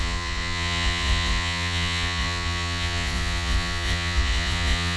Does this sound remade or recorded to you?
remade